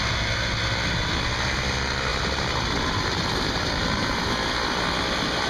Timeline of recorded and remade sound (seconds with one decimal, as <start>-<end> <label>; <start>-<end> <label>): 0.0-2.1 recorded; 2.1-4.3 remade; 4.3-5.5 recorded